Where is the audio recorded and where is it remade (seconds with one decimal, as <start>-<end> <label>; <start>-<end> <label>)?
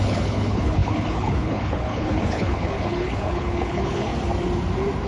0.0-4.1 remade; 4.1-5.1 recorded